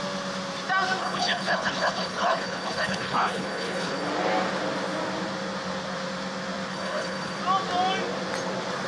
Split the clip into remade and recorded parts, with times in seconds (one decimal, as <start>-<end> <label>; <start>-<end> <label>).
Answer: 0.0-1.0 recorded; 1.0-4.1 remade; 4.1-6.7 recorded; 6.7-7.4 remade; 7.4-8.9 recorded